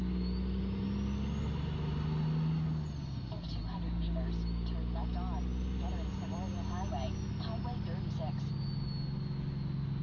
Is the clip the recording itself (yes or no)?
yes